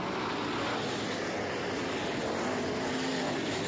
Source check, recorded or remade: recorded